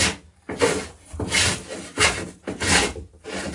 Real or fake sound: real